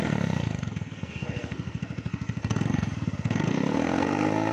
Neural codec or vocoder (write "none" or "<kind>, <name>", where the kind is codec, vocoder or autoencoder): codec, SNAC